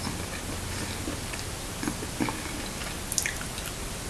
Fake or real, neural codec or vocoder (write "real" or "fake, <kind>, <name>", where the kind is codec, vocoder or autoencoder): real